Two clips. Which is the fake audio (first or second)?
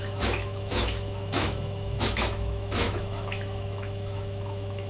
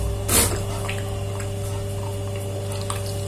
first